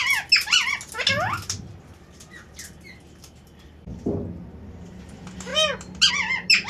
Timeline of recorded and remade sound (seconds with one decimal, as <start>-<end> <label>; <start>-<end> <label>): 0.0-6.7 recorded